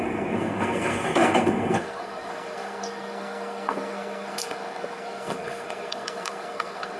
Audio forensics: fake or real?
fake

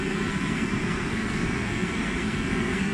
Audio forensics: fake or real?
fake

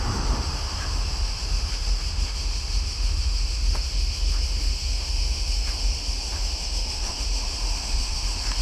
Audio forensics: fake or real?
fake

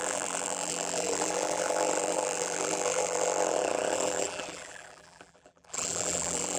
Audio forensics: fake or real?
fake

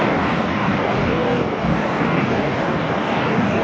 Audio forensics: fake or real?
fake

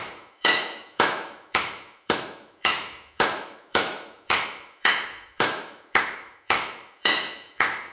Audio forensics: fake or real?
fake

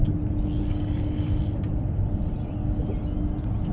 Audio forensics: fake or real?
real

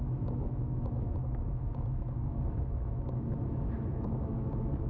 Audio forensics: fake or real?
fake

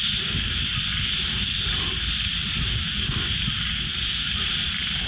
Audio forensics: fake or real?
real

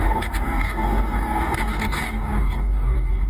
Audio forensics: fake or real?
fake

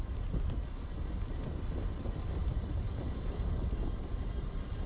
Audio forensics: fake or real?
real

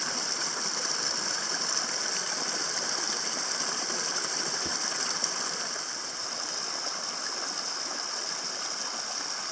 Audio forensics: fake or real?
real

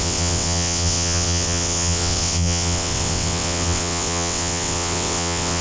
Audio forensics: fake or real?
fake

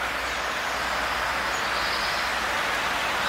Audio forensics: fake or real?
real